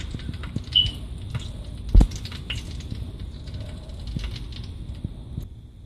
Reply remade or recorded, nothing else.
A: recorded